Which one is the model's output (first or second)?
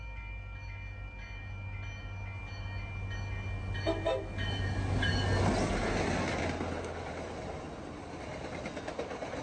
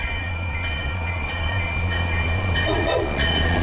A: second